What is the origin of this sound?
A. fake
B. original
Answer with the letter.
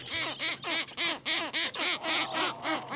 B